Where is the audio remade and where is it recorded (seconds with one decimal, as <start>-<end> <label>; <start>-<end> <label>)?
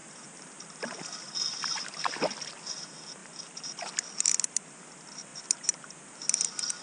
0.0-1.0 remade; 1.0-1.5 recorded; 1.5-2.1 remade; 2.1-3.2 recorded; 3.2-3.9 remade; 3.9-5.3 recorded; 5.3-6.2 remade; 6.2-6.8 recorded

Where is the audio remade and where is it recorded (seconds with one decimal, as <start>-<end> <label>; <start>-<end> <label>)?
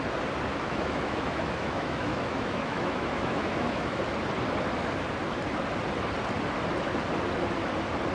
0.0-0.5 recorded; 0.5-4.0 remade; 4.0-8.1 recorded